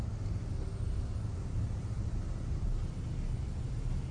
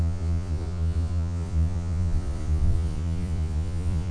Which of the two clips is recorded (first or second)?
first